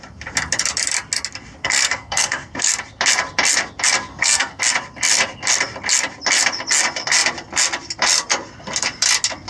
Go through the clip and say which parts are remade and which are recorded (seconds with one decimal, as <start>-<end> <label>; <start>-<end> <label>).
0.0-1.6 recorded; 1.6-2.7 remade; 2.7-4.1 recorded; 4.1-4.6 remade; 4.6-9.5 recorded